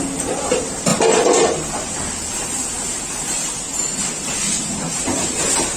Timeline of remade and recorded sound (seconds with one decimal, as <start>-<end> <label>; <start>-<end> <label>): 0.0-5.8 recorded